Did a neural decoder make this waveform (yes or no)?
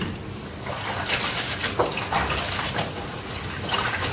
no